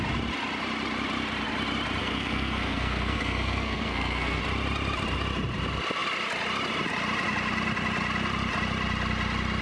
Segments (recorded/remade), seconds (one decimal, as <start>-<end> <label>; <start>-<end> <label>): 0.0-2.0 recorded; 2.0-4.4 remade; 4.4-9.6 recorded